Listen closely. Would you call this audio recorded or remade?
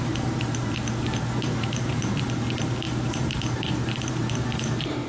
remade